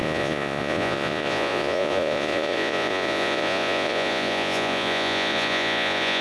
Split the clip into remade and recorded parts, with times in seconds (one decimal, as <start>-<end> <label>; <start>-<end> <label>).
0.0-6.2 remade